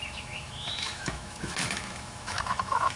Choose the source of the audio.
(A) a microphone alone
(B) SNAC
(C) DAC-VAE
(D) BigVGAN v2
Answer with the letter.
C